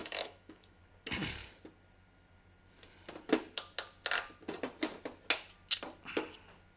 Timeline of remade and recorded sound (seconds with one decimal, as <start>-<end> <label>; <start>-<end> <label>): 0.0-0.8 remade; 0.8-6.8 recorded